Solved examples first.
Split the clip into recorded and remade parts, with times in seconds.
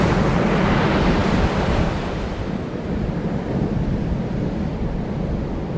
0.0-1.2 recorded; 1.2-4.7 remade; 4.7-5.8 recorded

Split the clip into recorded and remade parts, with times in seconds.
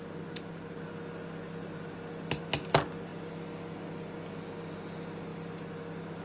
0.0-6.2 recorded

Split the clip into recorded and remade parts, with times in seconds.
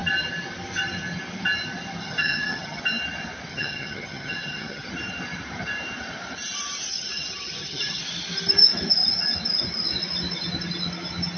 0.0-2.0 recorded; 2.0-2.8 remade; 2.8-3.5 recorded; 3.5-4.9 remade; 4.9-6.9 recorded; 6.9-8.0 remade; 8.0-11.4 recorded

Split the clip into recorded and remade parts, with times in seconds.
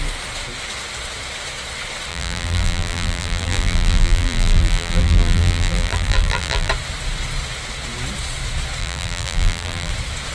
0.0-2.1 recorded; 2.1-6.7 remade; 6.7-8.8 recorded; 8.8-9.9 remade; 9.9-10.3 recorded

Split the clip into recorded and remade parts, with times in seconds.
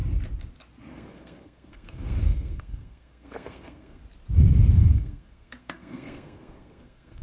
0.0-0.9 recorded; 0.9-4.0 remade; 4.0-4.7 recorded; 4.7-7.2 remade